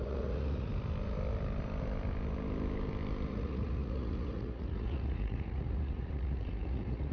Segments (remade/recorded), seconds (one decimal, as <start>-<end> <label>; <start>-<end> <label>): 0.0-0.7 remade; 0.7-3.3 recorded; 3.3-7.1 remade